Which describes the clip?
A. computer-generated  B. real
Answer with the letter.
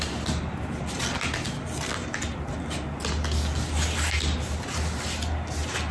B